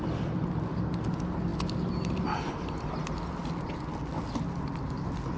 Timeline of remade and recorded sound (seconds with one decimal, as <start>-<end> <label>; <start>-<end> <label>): 0.0-5.4 recorded